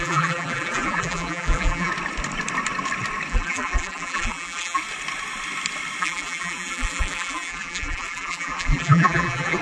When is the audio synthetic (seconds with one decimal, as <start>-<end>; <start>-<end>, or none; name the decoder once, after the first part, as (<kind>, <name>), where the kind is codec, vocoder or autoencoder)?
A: 0.0-1.9 (vocoder, BigVGAN v2); 3.3-4.8; 6.0-9.6